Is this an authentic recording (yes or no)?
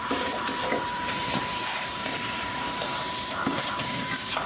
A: no